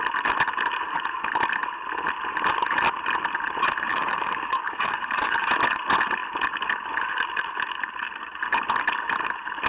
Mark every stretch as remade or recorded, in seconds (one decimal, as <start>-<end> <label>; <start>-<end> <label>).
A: 0.0-3.9 recorded; 3.9-5.3 remade; 5.3-9.7 recorded